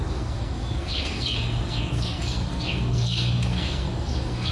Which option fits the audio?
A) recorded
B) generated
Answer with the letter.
B